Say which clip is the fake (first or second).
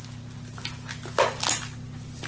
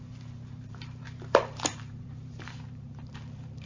second